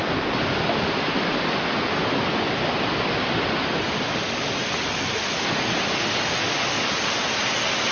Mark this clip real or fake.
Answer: real